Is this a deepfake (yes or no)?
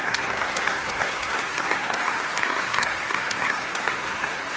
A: yes